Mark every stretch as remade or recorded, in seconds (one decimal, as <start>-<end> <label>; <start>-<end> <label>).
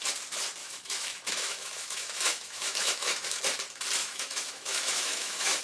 0.0-0.6 recorded; 0.6-3.4 remade; 3.4-4.0 recorded; 4.0-5.6 remade